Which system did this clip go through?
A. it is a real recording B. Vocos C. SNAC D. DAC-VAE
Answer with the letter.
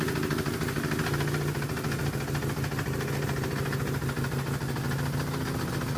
A